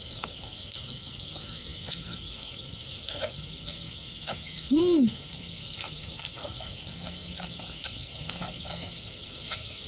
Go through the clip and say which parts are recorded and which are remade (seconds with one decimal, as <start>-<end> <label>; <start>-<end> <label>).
0.0-9.9 remade